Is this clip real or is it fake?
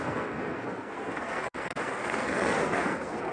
fake